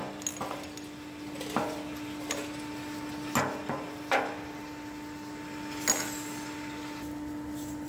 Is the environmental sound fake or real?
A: real